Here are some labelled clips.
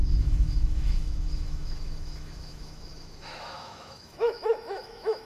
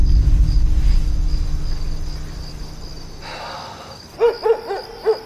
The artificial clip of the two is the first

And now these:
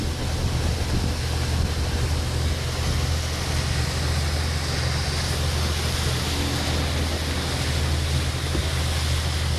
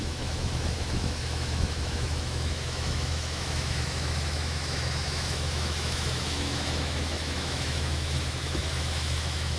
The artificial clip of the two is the second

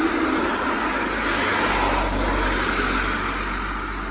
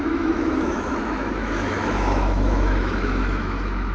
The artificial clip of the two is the second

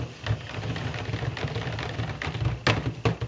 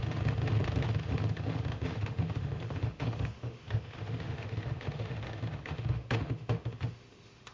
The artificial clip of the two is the second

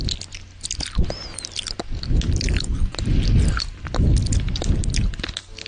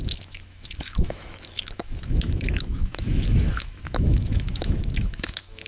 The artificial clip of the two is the second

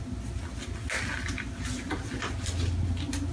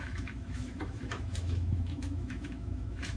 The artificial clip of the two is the second